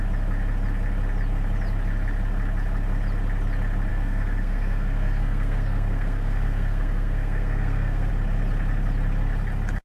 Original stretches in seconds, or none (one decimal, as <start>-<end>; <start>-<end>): 0.0-3.9; 8.1-9.8